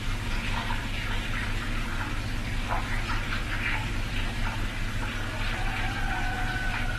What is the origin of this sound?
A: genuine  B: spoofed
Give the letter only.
A